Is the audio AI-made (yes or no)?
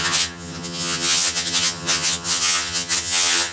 yes